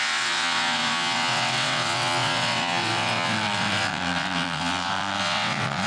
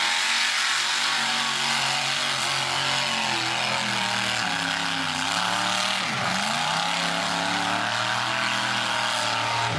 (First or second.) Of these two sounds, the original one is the second